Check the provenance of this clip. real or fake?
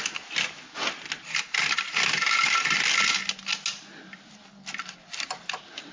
real